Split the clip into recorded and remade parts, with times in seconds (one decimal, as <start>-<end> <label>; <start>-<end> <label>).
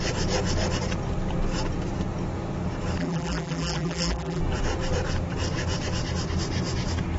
0.0-3.0 recorded; 3.0-4.4 remade; 4.4-7.2 recorded